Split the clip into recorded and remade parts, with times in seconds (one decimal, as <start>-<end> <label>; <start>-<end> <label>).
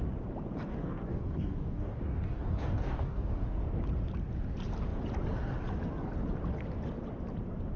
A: 0.0-0.7 recorded; 0.7-3.6 remade; 3.6-7.8 recorded